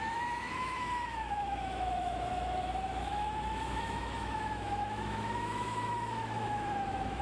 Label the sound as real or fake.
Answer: fake